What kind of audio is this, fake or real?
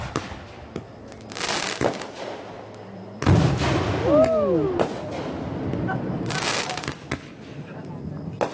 real